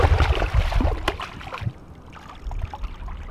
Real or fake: real